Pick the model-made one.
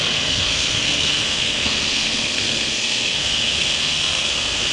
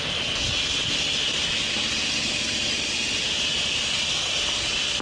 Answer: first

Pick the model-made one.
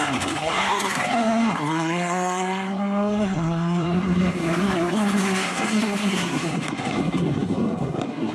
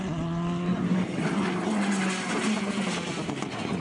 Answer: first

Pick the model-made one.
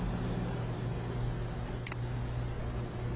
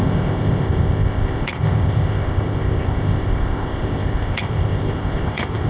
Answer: second